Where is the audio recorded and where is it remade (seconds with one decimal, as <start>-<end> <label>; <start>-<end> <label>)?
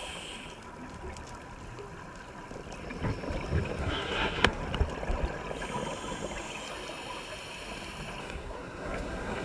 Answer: 0.0-3.8 recorded; 3.8-4.6 remade; 4.6-8.2 recorded; 8.2-9.4 remade